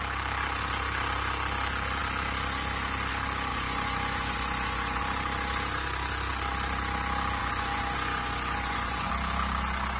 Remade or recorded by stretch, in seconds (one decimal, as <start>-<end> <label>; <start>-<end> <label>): 0.0-3.5 recorded; 3.5-5.0 remade; 5.0-7.4 recorded; 7.4-9.1 remade; 9.1-10.0 recorded